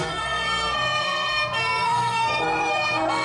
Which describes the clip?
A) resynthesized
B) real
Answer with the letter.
A